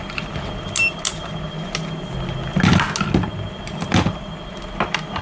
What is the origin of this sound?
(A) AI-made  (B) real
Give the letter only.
B